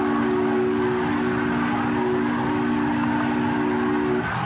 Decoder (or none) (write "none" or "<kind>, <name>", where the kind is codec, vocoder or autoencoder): none